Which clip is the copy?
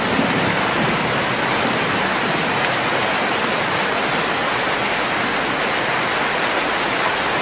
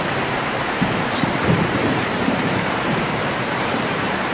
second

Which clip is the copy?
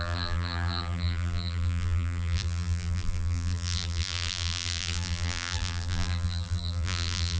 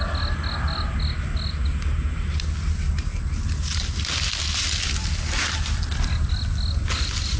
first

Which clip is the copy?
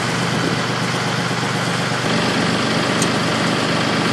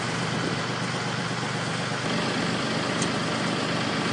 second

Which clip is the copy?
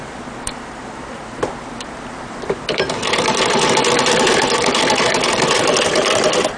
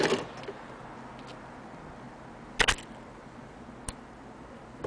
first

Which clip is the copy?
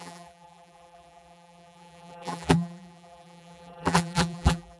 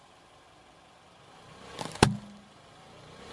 first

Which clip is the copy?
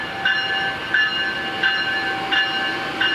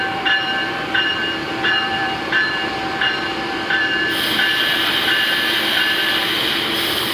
second